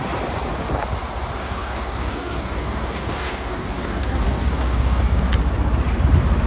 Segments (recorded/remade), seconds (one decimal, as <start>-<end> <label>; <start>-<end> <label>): 0.0-1.4 recorded; 1.4-5.3 remade; 5.3-6.5 recorded